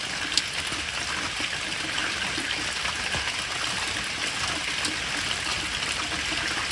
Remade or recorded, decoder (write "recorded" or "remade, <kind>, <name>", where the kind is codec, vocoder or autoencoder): recorded